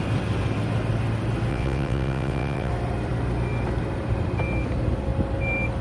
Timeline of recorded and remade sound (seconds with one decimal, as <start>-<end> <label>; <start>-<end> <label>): 0.0-1.5 recorded; 1.5-2.7 remade; 2.7-5.8 recorded